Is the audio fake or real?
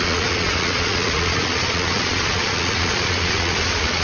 fake